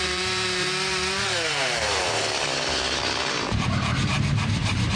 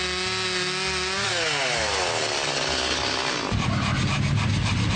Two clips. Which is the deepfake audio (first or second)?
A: first